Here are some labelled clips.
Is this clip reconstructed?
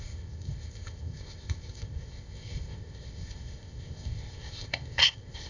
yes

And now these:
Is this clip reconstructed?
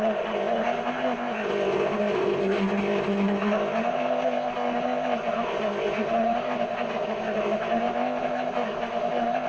yes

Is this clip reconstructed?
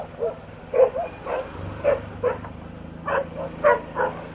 no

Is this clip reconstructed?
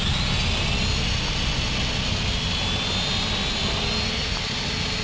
no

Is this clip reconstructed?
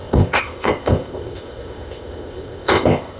yes